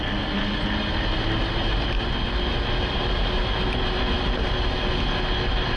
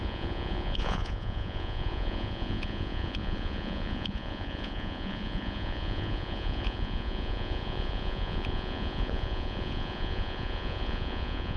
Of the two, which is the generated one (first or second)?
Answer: second